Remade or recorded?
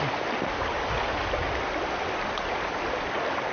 recorded